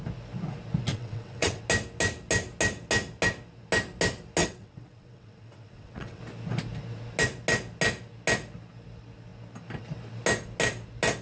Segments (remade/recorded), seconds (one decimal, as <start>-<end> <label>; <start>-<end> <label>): 0.0-0.9 recorded; 0.9-1.6 remade; 1.6-4.4 recorded; 4.4-6.2 remade; 6.2-11.2 recorded